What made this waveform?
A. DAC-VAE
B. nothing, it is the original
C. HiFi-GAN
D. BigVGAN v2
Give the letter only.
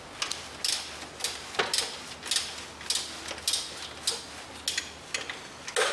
B